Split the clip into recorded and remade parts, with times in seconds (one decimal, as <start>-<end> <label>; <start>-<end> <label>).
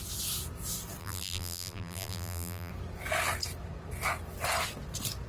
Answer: 0.0-1.0 recorded; 1.0-2.7 remade; 2.7-5.3 recorded